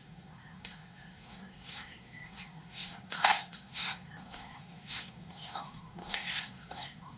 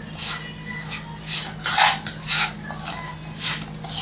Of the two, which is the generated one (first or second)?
first